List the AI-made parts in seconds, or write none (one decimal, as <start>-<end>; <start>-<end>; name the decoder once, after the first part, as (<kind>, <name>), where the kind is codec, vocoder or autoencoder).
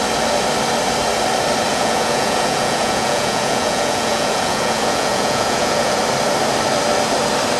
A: 1.7-6.0 (vocoder, Vocos)